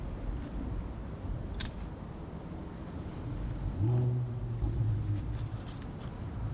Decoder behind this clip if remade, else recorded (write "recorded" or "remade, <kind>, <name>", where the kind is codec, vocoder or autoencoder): recorded